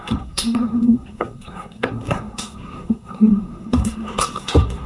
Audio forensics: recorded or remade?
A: remade